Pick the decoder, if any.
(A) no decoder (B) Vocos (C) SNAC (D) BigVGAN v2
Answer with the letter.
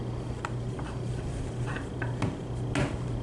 A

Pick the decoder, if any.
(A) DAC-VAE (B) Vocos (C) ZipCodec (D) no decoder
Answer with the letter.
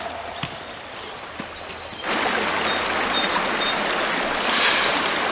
D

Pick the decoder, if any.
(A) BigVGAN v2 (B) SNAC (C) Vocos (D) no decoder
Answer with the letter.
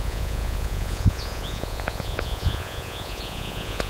C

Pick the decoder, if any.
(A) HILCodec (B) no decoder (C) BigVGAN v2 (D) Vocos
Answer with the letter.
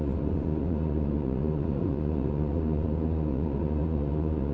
D